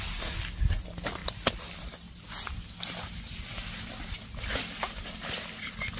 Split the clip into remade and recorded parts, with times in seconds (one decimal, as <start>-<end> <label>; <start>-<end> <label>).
0.0-6.0 recorded

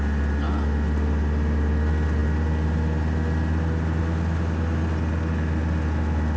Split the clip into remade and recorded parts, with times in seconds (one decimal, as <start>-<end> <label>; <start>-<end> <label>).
0.0-6.4 recorded